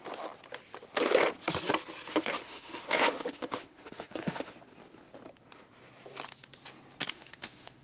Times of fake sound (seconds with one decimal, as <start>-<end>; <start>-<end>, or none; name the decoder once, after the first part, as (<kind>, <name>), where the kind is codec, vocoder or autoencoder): 2.1-4.5 (autoencoder, DAC-VAE); 7.1-7.8